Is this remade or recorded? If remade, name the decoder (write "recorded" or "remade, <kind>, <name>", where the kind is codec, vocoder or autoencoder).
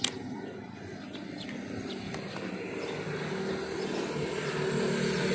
recorded